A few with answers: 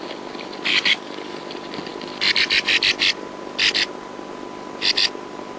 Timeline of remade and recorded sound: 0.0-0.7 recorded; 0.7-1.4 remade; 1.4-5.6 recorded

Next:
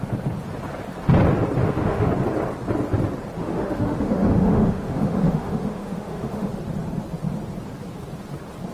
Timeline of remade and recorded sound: 0.0-1.6 recorded; 1.6-2.1 remade; 2.1-3.4 recorded; 3.4-6.5 remade; 6.5-8.7 recorded